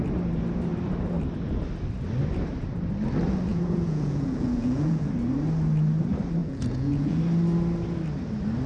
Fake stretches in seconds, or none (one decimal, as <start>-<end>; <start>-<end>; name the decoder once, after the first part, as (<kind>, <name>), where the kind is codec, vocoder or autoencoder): 3.5-5.1 (vocoder, Vocos); 6.4-7.2